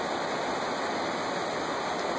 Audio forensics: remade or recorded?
recorded